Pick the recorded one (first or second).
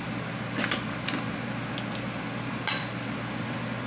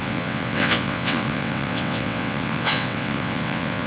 first